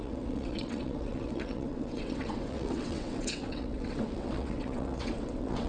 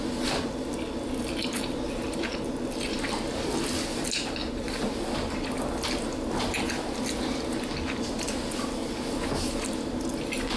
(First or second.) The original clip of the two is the second